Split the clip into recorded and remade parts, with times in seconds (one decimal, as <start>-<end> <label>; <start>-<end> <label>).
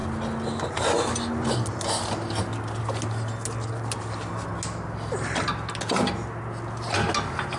0.0-7.6 recorded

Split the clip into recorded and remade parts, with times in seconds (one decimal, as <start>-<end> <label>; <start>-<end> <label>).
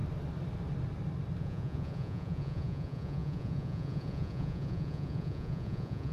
0.0-1.4 recorded; 1.4-6.1 remade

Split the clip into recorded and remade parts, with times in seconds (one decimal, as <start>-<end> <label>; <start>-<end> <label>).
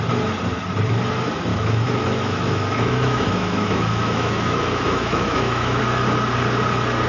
0.0-1.5 recorded; 1.5-5.8 remade; 5.8-7.1 recorded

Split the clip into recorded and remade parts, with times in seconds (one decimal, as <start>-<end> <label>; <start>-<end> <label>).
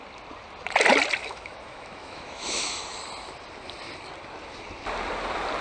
0.0-1.2 recorded; 1.2-2.8 remade; 2.8-5.6 recorded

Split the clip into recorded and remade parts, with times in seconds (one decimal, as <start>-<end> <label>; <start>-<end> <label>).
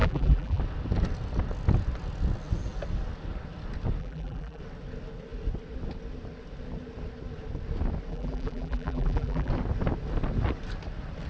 0.0-0.6 remade; 0.6-4.0 recorded; 4.0-4.6 remade; 4.6-8.1 recorded; 8.1-9.5 remade; 9.5-11.3 recorded